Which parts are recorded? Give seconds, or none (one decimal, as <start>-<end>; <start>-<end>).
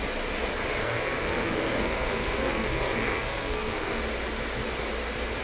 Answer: 0.0-0.8; 4.0-5.4